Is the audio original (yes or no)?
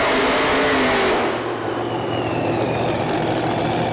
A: yes